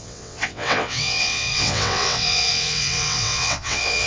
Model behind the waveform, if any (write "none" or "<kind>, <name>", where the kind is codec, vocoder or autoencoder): vocoder, WaveNeXt